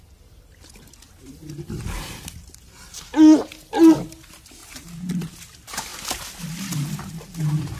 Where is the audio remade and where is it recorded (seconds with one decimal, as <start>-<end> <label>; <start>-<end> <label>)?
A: 0.0-7.8 recorded